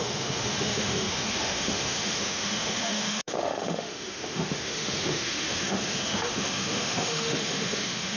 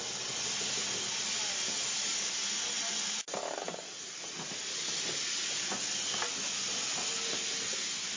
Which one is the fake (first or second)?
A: first